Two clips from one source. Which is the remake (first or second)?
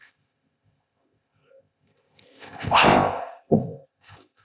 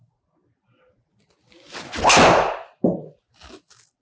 first